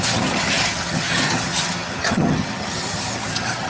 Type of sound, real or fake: fake